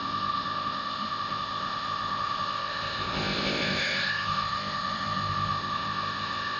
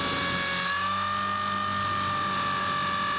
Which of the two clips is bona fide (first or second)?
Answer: second